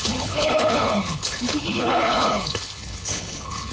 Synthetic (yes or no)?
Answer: yes